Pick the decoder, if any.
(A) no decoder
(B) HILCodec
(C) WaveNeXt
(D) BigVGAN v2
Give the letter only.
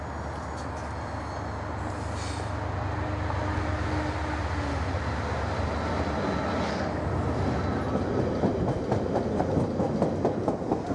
A